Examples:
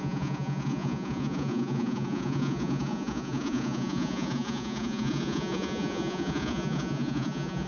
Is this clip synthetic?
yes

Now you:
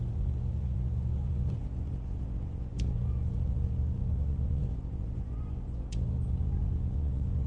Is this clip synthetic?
yes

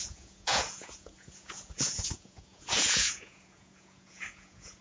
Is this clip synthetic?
yes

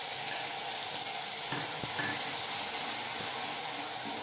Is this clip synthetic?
no